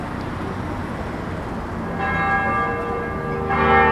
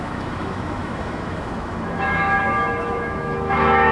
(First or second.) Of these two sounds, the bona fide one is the first